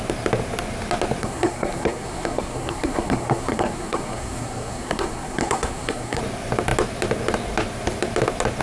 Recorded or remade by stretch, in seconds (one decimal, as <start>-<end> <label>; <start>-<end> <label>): 0.0-1.2 recorded; 1.2-6.2 remade; 6.2-8.6 recorded